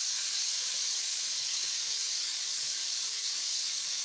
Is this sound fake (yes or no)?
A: yes